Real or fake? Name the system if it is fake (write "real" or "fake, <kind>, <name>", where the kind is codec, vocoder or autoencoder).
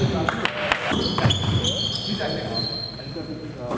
real